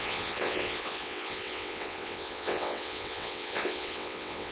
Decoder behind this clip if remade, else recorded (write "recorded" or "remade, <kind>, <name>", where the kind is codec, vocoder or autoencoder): remade, vocoder, WaveNeXt